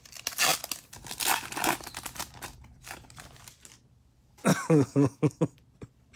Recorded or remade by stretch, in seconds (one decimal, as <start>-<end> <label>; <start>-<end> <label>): 0.0-4.5 recorded; 4.5-5.4 remade; 5.4-6.2 recorded